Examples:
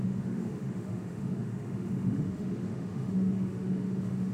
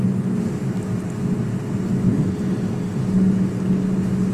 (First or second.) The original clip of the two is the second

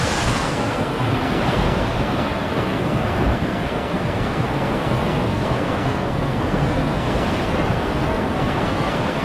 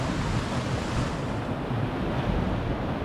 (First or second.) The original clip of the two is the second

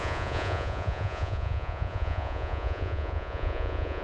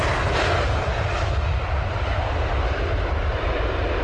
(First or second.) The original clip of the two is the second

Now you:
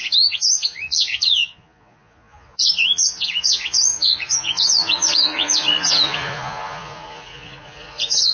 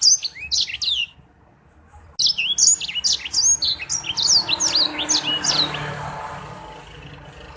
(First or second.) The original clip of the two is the second